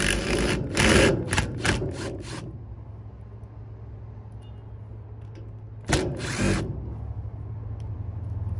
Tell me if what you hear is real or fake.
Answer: real